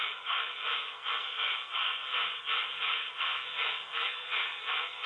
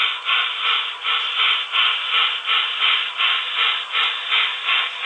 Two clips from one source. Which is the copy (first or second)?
first